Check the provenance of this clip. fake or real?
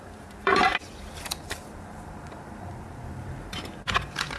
fake